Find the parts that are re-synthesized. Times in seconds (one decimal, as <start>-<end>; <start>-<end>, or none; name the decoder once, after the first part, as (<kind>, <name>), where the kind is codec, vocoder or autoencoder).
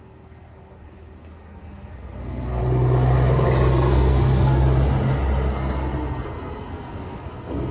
0.0-2.6 (codec, SNAC); 3.7-4.6; 5.5-7.7